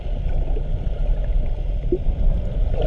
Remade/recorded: recorded